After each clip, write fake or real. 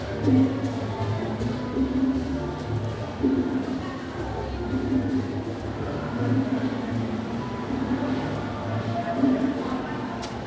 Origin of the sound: real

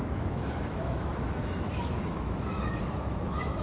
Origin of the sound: fake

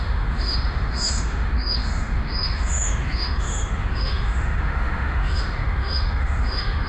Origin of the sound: fake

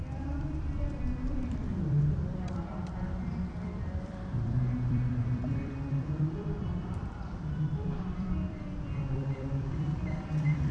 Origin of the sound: fake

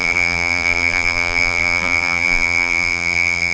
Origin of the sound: fake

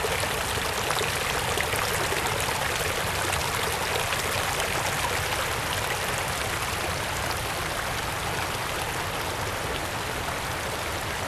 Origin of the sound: real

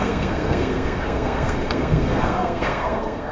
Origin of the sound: fake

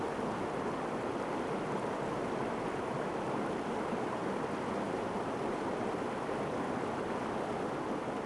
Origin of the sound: real